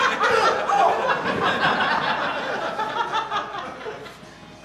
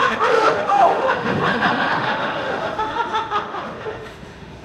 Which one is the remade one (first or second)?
second